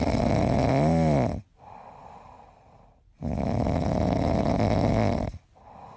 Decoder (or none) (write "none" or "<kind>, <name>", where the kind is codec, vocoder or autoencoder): none